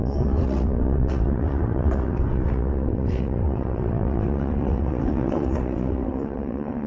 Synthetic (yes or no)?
yes